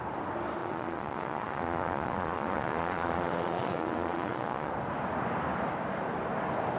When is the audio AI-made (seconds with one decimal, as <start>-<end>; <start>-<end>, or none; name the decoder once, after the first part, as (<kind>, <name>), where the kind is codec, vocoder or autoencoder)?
0.6-4.7 (vocoder, Vocos)